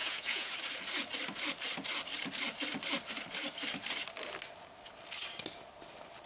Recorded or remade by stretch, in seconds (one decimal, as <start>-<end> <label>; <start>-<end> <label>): 0.0-0.5 remade; 0.5-6.3 recorded

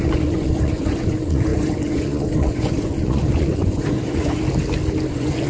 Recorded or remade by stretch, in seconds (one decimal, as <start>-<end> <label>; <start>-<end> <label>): 0.0-4.4 remade; 4.4-5.1 recorded; 5.1-5.5 remade

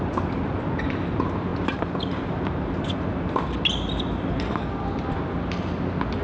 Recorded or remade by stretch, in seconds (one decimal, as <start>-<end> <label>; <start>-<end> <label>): 0.0-6.2 recorded

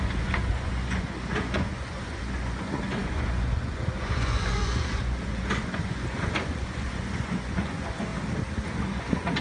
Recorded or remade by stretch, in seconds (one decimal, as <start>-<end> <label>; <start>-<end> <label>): 0.0-8.1 remade; 8.1-8.6 recorded; 8.6-9.4 remade

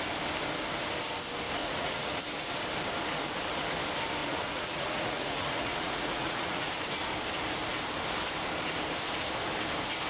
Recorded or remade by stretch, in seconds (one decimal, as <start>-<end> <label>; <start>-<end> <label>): 0.0-1.6 recorded; 1.6-2.2 remade; 2.2-4.2 recorded; 4.2-6.7 remade; 6.7-10.1 recorded

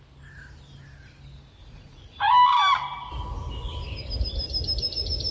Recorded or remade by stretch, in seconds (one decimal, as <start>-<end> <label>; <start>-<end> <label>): 0.0-1.6 recorded; 1.6-2.3 remade; 2.3-5.3 recorded